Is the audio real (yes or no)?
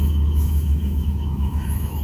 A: no